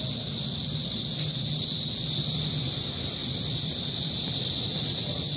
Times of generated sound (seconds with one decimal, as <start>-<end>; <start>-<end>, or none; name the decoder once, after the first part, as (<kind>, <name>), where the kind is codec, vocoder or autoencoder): 3.2-4.4 (vocoder, BigVGAN v2)